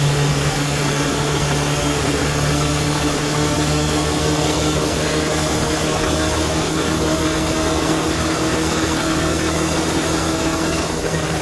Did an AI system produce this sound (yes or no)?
yes